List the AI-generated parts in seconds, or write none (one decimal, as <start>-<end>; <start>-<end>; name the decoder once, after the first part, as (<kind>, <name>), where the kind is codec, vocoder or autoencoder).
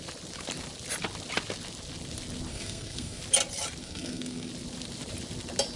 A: 2.5-3.2 (codec, SNAC); 3.8-4.5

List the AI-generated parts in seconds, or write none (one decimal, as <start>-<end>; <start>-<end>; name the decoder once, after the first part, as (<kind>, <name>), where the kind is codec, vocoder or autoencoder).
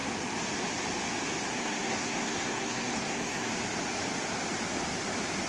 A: 1.5-3.5 (codec, SNAC)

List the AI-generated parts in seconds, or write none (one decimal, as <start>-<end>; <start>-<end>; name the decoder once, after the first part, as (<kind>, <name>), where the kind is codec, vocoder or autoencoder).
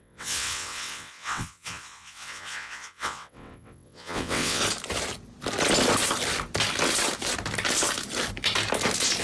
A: 0.0-4.6 (vocoder, WaveNeXt)